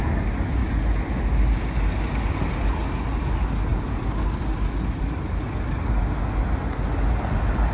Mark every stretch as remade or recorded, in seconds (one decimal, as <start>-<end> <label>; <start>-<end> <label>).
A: 0.0-7.7 recorded